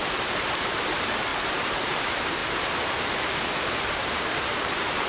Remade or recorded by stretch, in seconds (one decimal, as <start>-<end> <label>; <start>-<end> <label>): 0.0-2.4 remade; 2.4-3.8 recorded; 3.8-5.1 remade